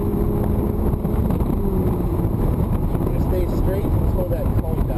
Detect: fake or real real